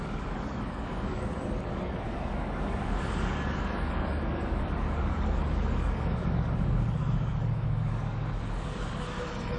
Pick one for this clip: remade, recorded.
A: remade